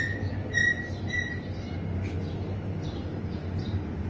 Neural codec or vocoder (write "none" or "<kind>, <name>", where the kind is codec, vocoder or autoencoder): none